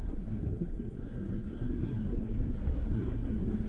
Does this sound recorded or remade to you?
remade